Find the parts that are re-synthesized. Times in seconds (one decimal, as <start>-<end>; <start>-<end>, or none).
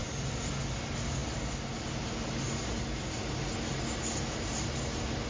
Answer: none